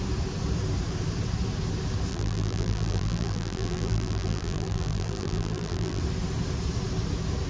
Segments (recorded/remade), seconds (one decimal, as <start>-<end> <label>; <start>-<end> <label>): 0.0-2.1 recorded; 2.1-6.0 remade; 6.0-7.5 recorded